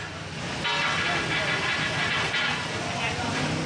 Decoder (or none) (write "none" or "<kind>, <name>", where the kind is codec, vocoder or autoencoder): none